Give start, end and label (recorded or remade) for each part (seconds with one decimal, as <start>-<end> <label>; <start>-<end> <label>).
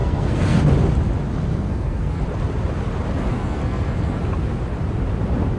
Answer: 0.0-0.6 remade; 0.6-1.5 recorded; 1.5-2.2 remade; 2.2-3.3 recorded; 3.3-4.2 remade; 4.2-5.6 recorded